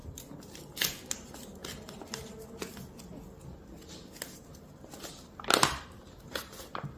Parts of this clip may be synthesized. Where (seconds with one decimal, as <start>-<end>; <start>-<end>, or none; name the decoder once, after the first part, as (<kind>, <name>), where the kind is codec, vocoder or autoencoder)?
0.0-0.7 (vocoder, BigVGAN v2)